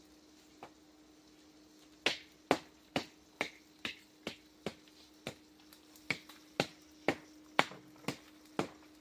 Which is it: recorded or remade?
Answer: recorded